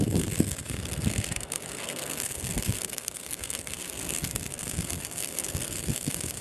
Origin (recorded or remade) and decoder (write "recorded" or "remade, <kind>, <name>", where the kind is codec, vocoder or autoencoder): remade, codec, SNAC